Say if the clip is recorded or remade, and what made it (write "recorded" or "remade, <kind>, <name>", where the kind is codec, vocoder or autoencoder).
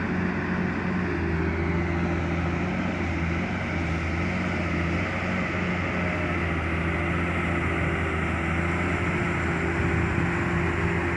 recorded